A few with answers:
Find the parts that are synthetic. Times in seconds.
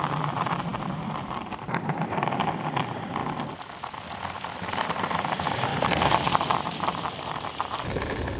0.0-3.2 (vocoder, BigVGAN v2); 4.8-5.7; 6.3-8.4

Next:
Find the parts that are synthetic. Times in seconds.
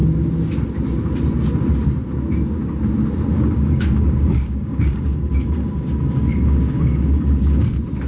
3.3-7.6 (codec, DAC)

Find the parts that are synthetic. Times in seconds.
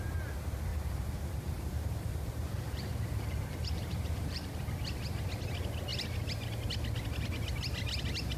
0.7-4.6 (vocoder, BigVGAN v2)